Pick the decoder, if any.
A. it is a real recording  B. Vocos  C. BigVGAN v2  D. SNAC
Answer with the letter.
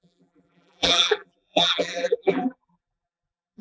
C